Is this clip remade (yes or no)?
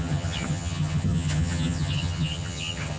yes